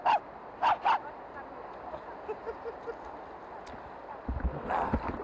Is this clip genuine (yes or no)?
yes